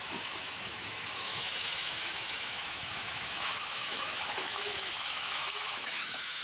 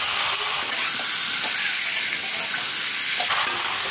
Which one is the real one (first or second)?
second